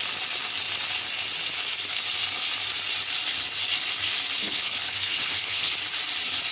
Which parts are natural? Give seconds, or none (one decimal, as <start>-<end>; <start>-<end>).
0.0-4.4; 5.7-6.5